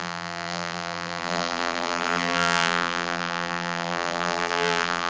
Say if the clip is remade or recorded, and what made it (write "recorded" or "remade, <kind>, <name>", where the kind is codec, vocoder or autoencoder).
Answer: remade, vocoder, BigVGAN v2